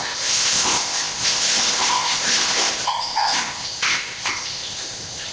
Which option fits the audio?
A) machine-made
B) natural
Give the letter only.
A